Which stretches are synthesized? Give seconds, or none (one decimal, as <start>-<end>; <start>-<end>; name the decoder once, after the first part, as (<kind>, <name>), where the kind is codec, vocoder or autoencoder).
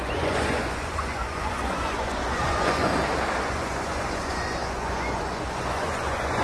0.0-2.9 (vocoder, Vocos); 3.4-6.4